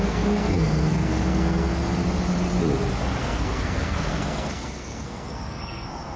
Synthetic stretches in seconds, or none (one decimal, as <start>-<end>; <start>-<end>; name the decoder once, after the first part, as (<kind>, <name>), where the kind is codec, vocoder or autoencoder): 0.0-1.7 (codec, SNAC); 3.2-6.2